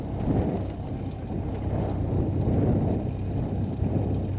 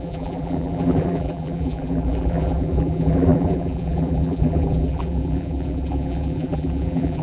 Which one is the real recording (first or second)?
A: first